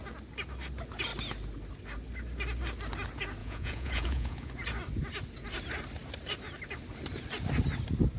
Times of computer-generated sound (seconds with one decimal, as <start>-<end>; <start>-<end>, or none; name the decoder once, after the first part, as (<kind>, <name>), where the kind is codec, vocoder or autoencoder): 3.4-4.5 (vocoder, Vocos)